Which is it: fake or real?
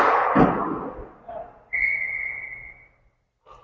real